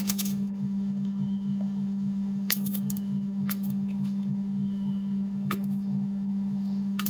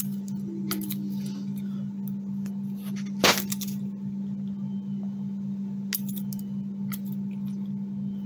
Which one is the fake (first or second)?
first